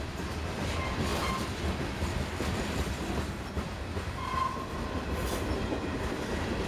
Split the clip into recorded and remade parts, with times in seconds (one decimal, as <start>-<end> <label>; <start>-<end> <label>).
0.0-6.7 recorded